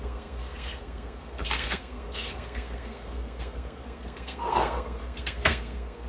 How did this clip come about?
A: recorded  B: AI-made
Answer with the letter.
B